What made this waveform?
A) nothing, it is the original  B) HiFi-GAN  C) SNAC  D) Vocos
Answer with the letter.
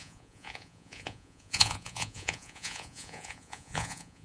D